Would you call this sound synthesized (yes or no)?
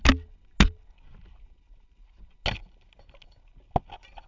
no